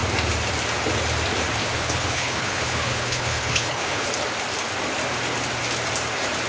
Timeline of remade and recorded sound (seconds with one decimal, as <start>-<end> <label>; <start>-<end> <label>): 0.0-1.6 recorded; 1.6-4.1 remade; 4.1-6.5 recorded